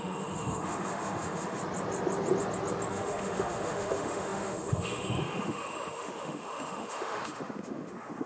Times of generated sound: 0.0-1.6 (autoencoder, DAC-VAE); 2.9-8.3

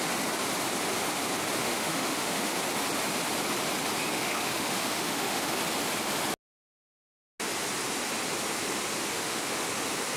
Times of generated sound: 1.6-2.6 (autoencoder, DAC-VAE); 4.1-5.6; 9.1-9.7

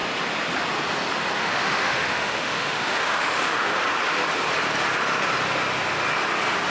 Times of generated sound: 1.4-3.7 (autoencoder, DAC-VAE)

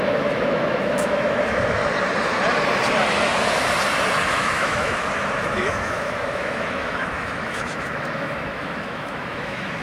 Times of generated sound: 0.0-1.8 (autoencoder, DAC-VAE); 4.3-9.8

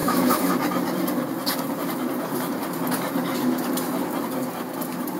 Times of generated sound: 0.0-0.5 (autoencoder, DAC-VAE)

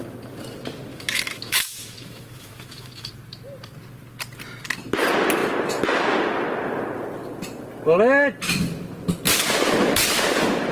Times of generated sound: 0.9-3.1 (autoencoder, DAC-VAE)

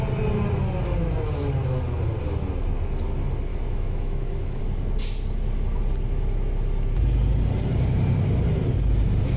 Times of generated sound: 3.5-4.6 (autoencoder, DAC-VAE)